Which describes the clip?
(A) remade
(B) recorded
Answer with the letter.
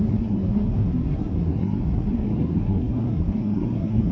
A